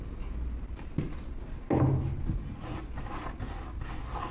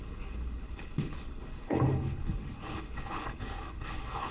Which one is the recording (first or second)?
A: first